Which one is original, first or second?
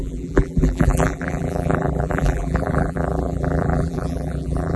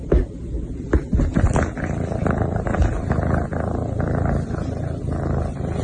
second